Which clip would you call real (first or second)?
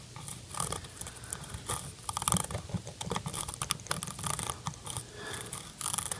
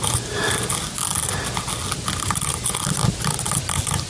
second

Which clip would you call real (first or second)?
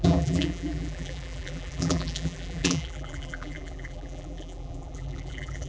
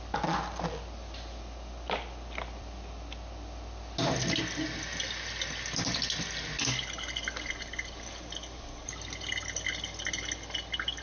second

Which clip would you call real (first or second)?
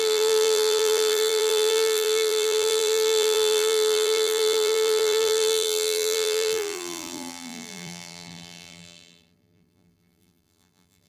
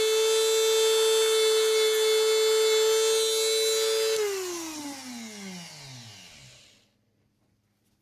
second